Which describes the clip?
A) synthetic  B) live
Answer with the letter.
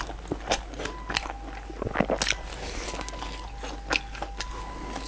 B